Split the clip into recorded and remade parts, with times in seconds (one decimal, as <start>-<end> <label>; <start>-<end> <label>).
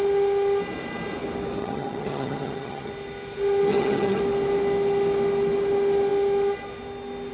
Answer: 0.0-1.6 recorded; 1.6-2.9 remade; 2.9-3.7 recorded; 3.7-4.2 remade; 4.2-7.3 recorded